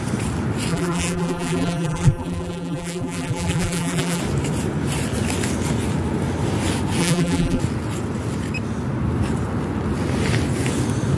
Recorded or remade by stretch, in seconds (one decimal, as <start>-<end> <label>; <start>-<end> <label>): 0.0-0.7 recorded; 0.7-4.2 remade; 4.2-7.0 recorded; 7.0-7.6 remade; 7.6-11.2 recorded